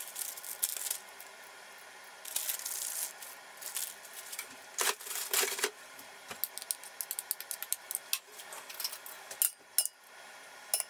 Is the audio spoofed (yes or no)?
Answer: no